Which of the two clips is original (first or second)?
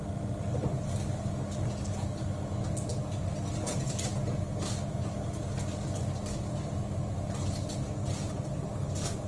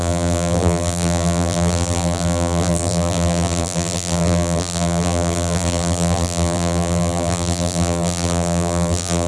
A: first